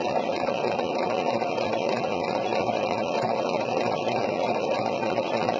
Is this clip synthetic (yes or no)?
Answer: yes